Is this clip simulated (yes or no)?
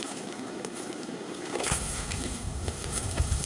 yes